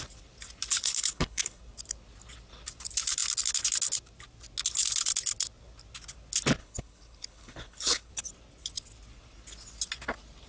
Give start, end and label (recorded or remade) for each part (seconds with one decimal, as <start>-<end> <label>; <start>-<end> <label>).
0.0-0.8 recorded; 0.8-1.6 remade; 1.6-6.6 recorded; 6.6-8.1 remade; 8.1-10.5 recorded